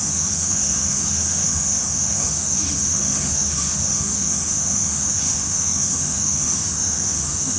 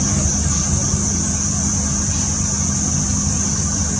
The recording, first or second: second